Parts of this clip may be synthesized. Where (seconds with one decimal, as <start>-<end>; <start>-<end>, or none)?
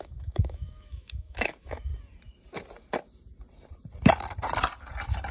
0.0-1.9